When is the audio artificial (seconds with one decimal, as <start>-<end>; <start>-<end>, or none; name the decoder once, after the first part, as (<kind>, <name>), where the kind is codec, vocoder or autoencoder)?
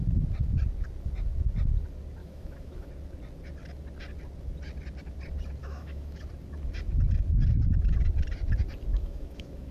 2.2-2.9 (autoencoder, DAC-VAE); 5.6-6.2; 8.9-9.7